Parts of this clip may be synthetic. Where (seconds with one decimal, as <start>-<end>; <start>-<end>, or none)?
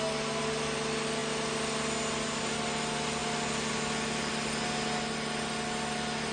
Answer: none